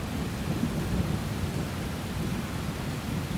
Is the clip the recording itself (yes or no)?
yes